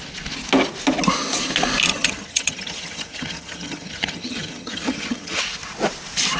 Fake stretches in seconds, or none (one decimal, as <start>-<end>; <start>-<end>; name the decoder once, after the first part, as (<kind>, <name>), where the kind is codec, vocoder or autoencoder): 1.9-5.4 (vocoder, HiFi-GAN)